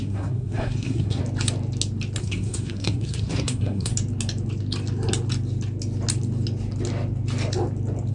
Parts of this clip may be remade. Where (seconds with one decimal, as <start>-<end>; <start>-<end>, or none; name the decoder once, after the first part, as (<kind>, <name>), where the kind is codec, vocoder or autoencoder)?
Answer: 0.0-1.2 (codec, SNAC); 2.2-3.9